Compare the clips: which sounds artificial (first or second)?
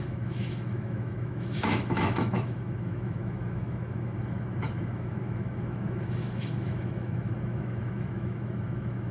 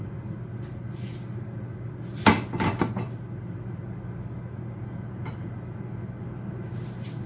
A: first